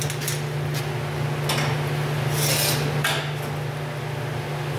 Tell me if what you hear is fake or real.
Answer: real